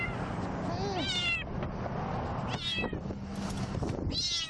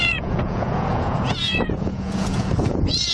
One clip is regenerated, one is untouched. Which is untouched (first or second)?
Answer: first